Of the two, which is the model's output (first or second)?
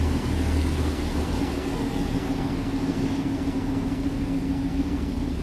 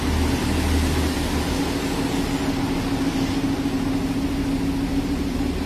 first